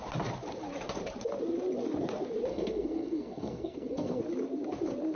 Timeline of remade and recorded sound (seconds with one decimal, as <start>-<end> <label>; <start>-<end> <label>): 0.0-2.5 recorded; 2.5-4.2 remade; 4.2-5.2 recorded